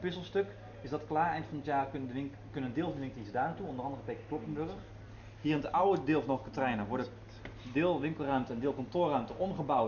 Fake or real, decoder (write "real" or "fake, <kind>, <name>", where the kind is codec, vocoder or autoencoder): real